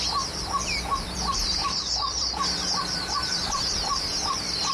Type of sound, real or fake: fake